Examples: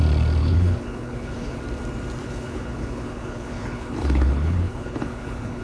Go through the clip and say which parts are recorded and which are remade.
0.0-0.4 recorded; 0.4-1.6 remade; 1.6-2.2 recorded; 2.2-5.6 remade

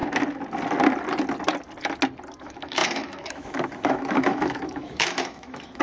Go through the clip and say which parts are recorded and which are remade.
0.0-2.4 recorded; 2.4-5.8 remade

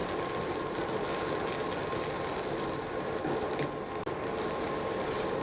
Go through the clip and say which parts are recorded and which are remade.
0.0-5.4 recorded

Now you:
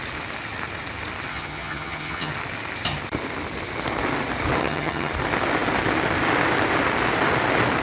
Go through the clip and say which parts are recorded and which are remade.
0.0-1.3 recorded; 1.3-2.3 remade; 2.3-4.6 recorded; 4.6-5.1 remade; 5.1-7.8 recorded

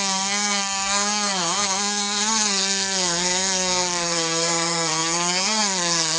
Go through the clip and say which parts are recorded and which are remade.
0.0-6.2 remade